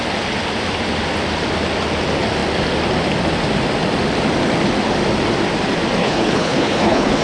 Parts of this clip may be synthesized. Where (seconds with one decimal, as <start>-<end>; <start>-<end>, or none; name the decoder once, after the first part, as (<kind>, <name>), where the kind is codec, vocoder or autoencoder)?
6.0-7.2 (codec, HILCodec)